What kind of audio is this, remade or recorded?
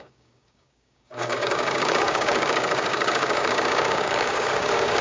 remade